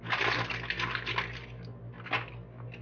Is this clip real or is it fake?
real